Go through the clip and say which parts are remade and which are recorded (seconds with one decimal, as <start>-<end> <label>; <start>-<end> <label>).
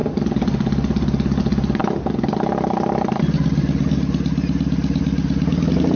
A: 0.0-6.0 recorded